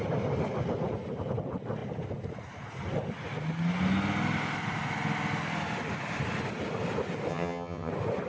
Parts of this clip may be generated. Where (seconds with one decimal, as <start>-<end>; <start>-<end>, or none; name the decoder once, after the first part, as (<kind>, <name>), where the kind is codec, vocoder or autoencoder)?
7.3-7.9 (vocoder, HiFi-GAN)